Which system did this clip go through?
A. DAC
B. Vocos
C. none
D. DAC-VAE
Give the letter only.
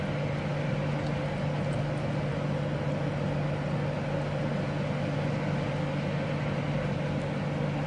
C